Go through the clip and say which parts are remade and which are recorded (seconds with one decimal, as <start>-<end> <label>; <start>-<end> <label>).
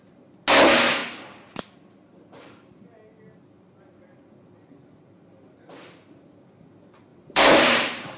0.0-7.1 recorded; 7.1-8.2 remade